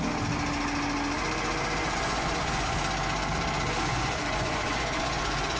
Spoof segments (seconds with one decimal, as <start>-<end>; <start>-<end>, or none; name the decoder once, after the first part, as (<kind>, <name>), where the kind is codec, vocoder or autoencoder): 1.8-2.8 (vocoder, Vocos); 3.9-5.6